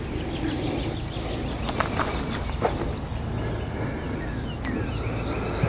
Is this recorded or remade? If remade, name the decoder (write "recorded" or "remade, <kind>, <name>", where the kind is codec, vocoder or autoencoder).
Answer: recorded